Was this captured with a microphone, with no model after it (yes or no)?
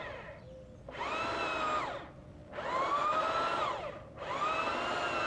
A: yes